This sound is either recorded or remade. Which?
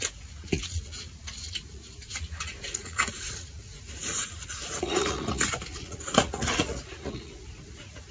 remade